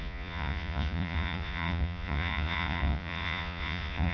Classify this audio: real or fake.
fake